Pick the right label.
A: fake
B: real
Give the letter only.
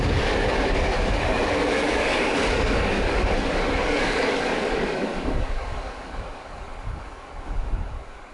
A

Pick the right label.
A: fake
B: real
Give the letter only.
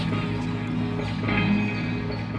B